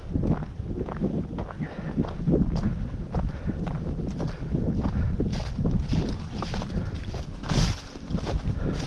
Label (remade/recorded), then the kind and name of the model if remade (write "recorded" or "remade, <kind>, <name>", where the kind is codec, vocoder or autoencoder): recorded